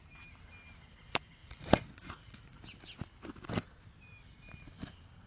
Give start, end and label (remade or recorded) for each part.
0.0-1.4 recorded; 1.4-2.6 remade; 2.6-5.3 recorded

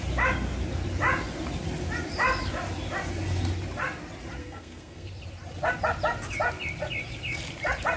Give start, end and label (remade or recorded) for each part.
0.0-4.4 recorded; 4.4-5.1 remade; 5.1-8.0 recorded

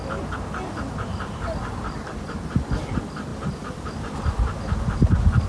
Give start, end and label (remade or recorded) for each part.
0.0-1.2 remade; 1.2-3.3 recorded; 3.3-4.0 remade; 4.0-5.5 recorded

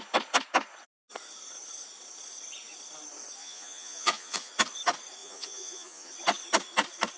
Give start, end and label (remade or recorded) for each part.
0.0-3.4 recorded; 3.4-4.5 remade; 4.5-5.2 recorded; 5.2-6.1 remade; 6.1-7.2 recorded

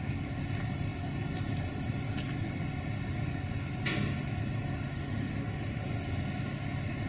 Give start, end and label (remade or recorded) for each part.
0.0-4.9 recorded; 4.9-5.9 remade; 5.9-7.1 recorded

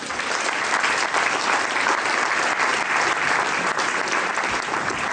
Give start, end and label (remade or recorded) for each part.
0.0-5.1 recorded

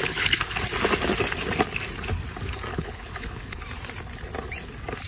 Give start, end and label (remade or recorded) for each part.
0.0-0.6 remade; 0.6-2.7 recorded; 2.7-3.6 remade; 3.6-5.1 recorded